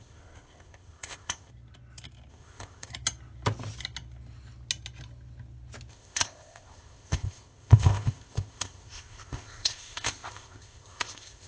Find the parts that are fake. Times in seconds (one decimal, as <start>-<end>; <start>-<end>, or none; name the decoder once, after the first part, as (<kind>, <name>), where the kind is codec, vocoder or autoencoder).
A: 0.0-1.5 (codec, ZipCodec); 2.3-2.9; 5.9-11.5